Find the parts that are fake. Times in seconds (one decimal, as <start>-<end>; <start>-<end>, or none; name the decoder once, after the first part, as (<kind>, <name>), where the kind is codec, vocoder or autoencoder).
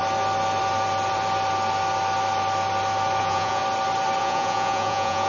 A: 3.2-3.6 (vocoder, Vocos); 4.2-5.3